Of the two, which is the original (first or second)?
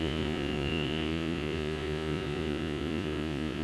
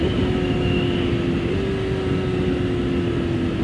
second